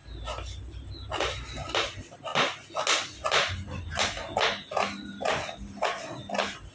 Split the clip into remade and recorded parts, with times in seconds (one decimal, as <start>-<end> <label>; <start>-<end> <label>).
0.0-6.7 recorded

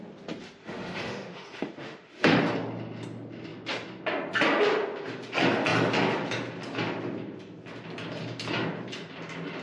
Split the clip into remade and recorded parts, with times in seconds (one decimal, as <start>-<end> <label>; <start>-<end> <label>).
0.0-0.6 recorded; 0.6-2.4 remade; 2.4-9.6 recorded

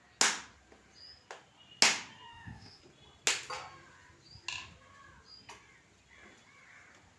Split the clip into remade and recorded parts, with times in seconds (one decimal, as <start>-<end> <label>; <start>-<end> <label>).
0.0-2.3 recorded; 2.3-2.8 remade; 2.8-7.2 recorded

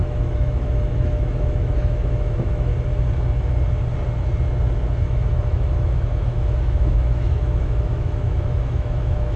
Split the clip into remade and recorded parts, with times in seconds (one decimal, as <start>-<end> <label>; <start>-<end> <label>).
0.0-2.7 remade; 2.7-5.0 recorded; 5.0-9.4 remade

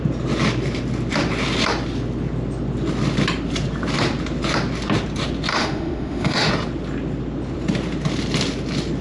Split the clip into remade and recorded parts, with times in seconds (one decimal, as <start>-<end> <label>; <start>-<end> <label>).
0.0-5.5 recorded; 5.5-6.5 remade; 6.5-9.0 recorded

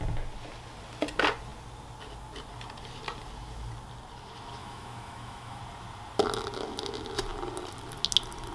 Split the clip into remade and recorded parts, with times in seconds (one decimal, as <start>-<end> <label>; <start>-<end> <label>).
0.0-4.6 recorded; 4.6-5.6 remade; 5.6-8.5 recorded

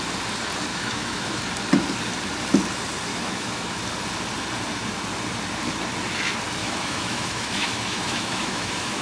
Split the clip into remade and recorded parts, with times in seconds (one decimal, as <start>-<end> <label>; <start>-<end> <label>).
0.0-0.7 recorded; 0.7-1.4 remade; 1.4-3.1 recorded; 3.1-3.8 remade; 3.8-6.6 recorded; 6.6-9.0 remade

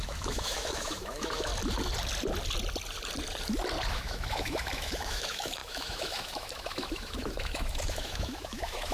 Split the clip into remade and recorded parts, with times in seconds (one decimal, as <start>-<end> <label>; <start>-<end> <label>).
0.0-1.5 remade; 1.5-3.9 recorded; 3.9-8.9 remade